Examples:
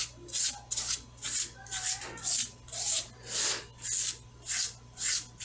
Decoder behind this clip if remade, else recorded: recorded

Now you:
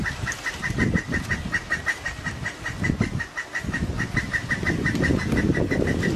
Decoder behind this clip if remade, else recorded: recorded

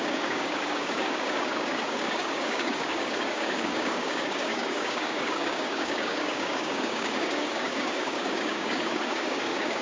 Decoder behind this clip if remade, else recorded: remade, codec, DAC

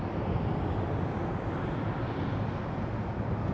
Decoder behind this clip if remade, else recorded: recorded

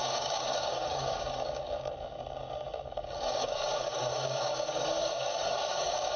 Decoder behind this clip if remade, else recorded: remade, codec, DAC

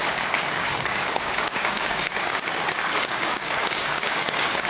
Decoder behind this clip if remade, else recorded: remade, codec, DAC